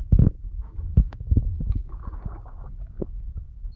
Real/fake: fake